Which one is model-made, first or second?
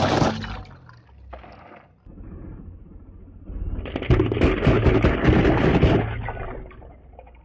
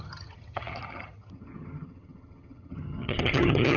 second